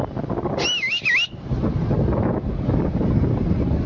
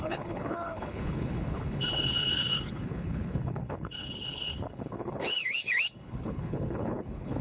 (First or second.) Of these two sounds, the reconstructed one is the second